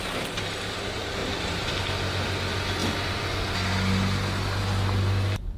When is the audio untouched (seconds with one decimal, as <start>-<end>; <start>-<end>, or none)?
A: 0.0-1.2; 1.7-5.6